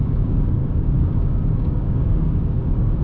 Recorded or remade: remade